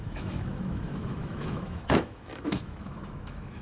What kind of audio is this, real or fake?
fake